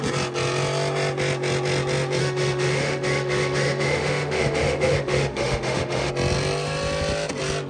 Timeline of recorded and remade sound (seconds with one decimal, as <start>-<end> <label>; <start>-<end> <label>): 0.0-2.2 recorded; 2.2-6.1 remade; 6.1-7.7 recorded